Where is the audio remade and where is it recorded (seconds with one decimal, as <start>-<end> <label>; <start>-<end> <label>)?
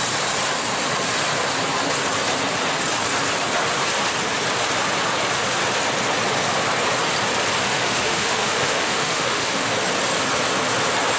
0.0-7.6 recorded; 7.6-9.7 remade; 9.7-11.2 recorded